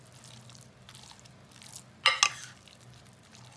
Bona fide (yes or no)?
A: yes